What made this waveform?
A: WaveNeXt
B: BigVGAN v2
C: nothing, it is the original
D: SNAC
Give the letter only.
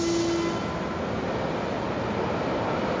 C